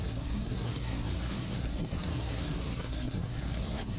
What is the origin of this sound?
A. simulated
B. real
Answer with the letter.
A